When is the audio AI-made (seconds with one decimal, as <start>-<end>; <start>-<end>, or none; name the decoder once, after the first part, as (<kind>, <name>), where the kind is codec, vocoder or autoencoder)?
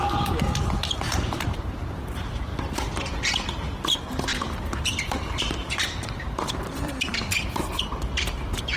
0.0-2.5 (vocoder, BigVGAN v2); 3.5-7.1; 8.3-8.8